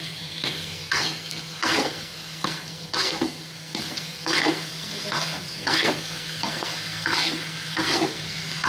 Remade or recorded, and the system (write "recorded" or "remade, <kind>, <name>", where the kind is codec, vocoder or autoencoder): remade, codec, SNAC